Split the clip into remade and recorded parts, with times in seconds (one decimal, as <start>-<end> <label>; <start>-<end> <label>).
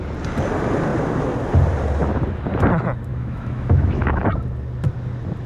0.0-3.1 recorded; 3.1-4.2 remade; 4.2-5.5 recorded